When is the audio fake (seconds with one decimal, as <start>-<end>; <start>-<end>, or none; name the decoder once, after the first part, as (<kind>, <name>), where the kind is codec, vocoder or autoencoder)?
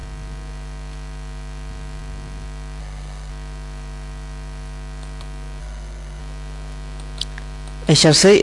2.8-3.3 (codec, SNAC); 5.6-6.2